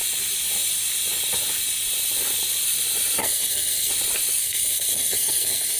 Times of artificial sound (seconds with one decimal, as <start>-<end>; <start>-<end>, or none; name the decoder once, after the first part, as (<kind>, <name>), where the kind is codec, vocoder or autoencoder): 3.2-3.9 (codec, SNAC); 4.4-5.8